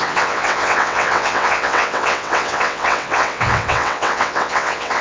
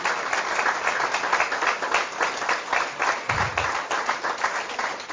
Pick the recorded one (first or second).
second